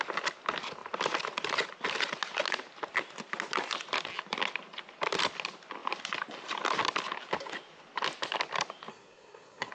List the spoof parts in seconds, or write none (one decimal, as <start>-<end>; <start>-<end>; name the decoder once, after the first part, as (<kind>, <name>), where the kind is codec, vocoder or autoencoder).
8.9-9.7 (codec, SNAC)

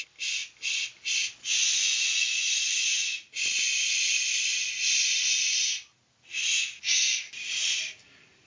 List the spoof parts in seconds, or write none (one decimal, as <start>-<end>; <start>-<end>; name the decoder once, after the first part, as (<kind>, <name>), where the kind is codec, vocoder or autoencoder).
none

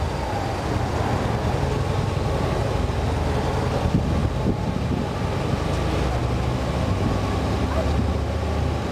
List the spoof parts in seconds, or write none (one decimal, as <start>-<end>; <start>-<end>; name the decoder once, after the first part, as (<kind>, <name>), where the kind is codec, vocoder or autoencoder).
none

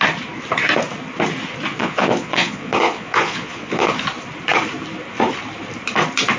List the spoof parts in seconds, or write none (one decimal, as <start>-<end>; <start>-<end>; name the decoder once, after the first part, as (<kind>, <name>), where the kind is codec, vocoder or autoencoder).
1.7-3.9 (vocoder, Vocos)